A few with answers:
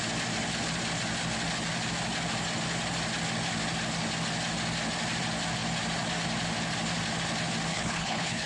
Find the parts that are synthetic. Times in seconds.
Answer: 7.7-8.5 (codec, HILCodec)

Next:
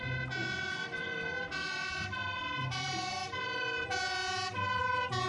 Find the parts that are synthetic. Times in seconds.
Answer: 0.4-3.6 (vocoder, BigVGAN v2)

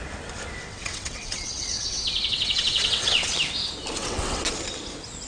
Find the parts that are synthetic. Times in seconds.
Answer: 0.6-3.3 (vocoder, WaveNeXt); 4.0-4.5

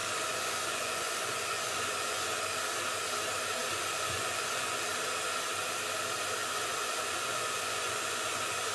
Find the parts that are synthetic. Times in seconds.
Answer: 0.0-2.4 (vocoder, Vocos); 3.6-4.8; 6.4-8.7

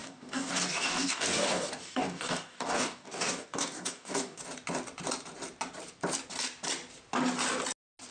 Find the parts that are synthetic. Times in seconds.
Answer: 0.0-4.4 (codec, DAC)

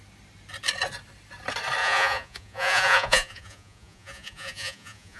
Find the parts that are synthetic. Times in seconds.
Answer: 1.8-5.2 (vocoder, Vocos)

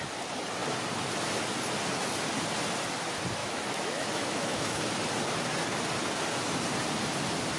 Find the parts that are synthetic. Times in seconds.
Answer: 3.4-4.8 (autoencoder, DAC-VAE)

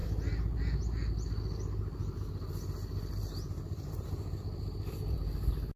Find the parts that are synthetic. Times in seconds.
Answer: none